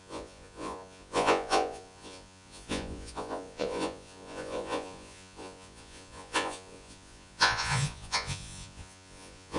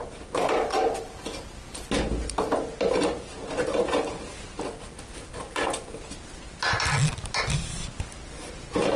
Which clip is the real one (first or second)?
second